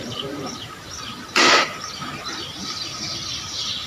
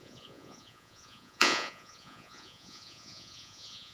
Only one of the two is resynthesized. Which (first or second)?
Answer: second